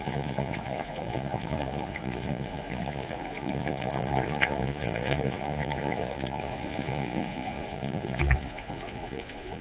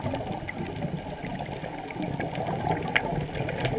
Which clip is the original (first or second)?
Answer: second